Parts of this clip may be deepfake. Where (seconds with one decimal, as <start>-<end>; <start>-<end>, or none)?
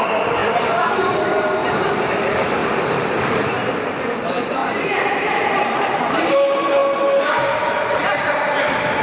0.0-0.4; 0.9-9.0